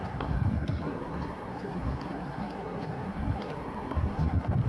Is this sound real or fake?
fake